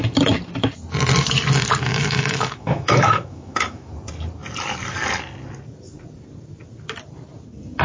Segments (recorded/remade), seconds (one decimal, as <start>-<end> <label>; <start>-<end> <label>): 0.0-1.9 recorded; 1.9-3.9 remade; 3.9-7.8 recorded